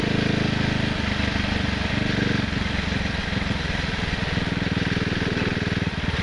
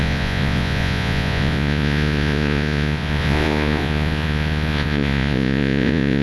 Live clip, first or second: first